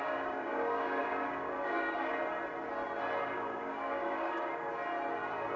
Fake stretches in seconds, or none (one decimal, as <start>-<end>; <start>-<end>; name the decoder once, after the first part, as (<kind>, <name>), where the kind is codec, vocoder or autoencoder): 0.0-2.1 (codec, DAC); 3.2-4.7